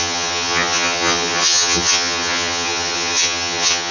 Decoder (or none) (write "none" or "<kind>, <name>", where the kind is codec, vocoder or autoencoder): vocoder, HiFi-GAN